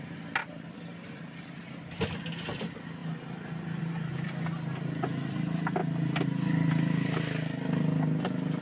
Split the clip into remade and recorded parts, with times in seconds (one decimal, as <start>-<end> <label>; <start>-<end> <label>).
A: 0.0-0.4 recorded; 0.4-2.0 remade; 2.0-8.6 recorded